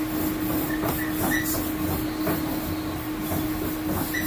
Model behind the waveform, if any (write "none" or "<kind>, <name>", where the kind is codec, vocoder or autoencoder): none